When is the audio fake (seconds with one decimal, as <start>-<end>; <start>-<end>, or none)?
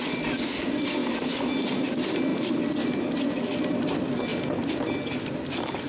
none